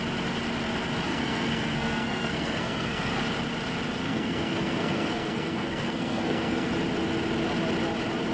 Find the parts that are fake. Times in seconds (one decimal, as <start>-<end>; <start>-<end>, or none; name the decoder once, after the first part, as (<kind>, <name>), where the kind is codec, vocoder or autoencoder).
1.1-3.2 (codec, SNAC); 4.0-6.7